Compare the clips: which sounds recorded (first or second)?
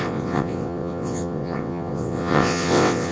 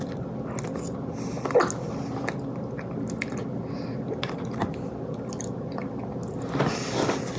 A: second